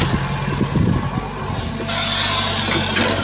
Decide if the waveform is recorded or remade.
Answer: recorded